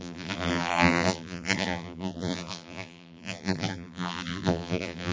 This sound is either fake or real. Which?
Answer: fake